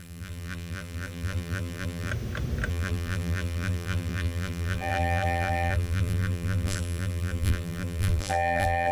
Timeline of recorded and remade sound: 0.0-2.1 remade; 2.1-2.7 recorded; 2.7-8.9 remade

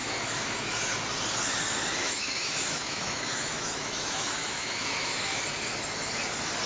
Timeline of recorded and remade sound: 0.0-0.6 remade; 0.6-2.0 recorded; 2.0-5.4 remade; 5.4-6.7 recorded